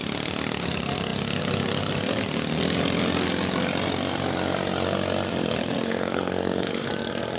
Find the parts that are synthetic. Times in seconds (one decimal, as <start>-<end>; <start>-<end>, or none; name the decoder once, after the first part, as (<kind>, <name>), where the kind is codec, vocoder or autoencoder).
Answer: 5.6-6.9 (codec, SNAC)